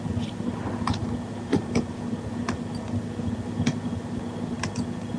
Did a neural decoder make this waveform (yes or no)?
no